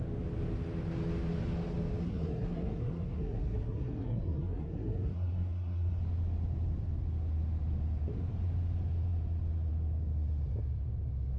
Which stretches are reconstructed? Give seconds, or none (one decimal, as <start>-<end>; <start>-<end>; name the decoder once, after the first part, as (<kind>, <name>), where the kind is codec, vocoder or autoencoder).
2.0-6.0 (codec, SNAC)